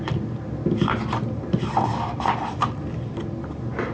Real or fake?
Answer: real